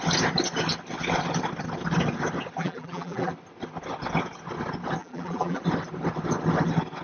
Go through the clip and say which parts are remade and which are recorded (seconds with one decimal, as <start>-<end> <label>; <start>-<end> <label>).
0.0-2.6 recorded; 2.6-3.3 remade; 3.3-5.0 recorded; 5.0-5.6 remade; 5.6-7.0 recorded